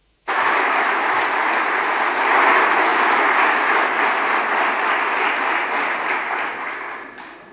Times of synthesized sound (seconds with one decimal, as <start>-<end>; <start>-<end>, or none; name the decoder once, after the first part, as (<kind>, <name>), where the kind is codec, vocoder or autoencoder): 0.0-1.2 (autoencoder, DAC-VAE)